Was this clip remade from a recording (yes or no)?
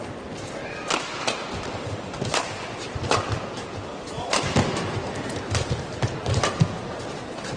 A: no